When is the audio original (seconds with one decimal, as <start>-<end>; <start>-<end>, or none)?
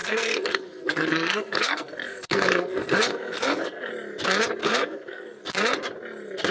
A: 3.9-4.6; 5.4-6.5